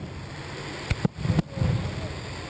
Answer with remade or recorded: recorded